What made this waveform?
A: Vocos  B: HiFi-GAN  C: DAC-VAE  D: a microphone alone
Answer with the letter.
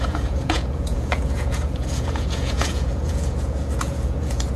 A